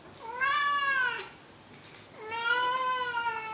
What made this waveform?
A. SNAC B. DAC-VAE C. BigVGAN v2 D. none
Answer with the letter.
D